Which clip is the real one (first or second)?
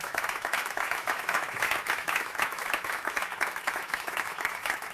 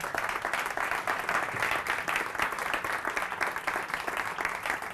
second